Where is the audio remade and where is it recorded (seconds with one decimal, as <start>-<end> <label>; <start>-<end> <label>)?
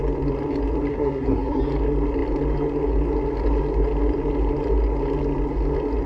0.0-0.9 recorded; 0.9-1.6 remade; 1.6-6.1 recorded